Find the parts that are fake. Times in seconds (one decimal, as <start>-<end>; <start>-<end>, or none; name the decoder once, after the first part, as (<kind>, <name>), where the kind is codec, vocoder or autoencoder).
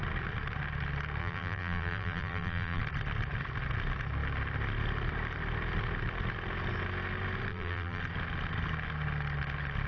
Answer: 1.2-2.8 (vocoder, BigVGAN v2); 7.5-8.0